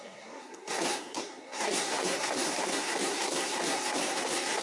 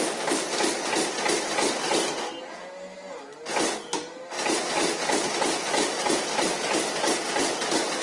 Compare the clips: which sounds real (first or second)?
second